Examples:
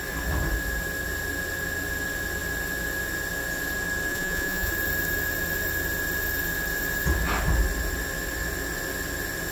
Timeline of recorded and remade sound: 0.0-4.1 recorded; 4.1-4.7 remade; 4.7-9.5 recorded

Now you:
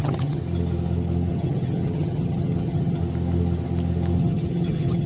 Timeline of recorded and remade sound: 0.0-0.4 remade; 0.4-1.3 recorded; 1.3-3.0 remade; 3.0-4.2 recorded; 4.2-5.1 remade

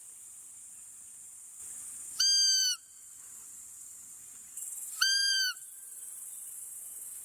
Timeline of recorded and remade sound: 0.0-0.5 remade; 0.5-2.6 recorded; 2.6-7.2 remade

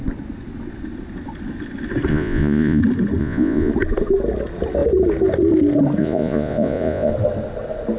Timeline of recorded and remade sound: 0.0-2.1 recorded; 2.1-2.8 remade; 2.8-3.2 recorded; 3.2-3.7 remade; 3.7-6.0 recorded; 6.0-7.1 remade; 7.1-8.0 recorded

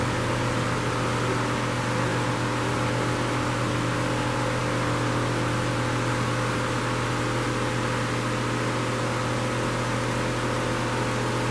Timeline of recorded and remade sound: 0.0-11.5 recorded